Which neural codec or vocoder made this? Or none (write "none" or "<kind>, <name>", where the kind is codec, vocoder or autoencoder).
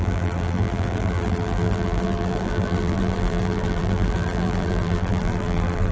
vocoder, BigVGAN v2